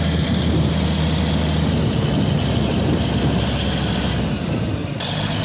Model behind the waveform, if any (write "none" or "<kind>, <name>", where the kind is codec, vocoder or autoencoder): none